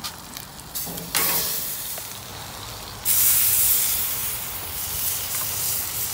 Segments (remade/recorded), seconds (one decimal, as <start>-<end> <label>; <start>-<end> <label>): 0.0-2.3 remade; 2.3-3.1 recorded; 3.1-6.1 remade